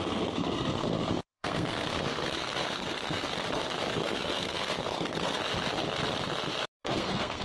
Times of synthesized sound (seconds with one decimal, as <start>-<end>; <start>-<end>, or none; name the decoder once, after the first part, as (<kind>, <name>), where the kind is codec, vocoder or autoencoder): 0.0-3.3 (codec, SNAC); 3.9-5.4; 6.8-7.4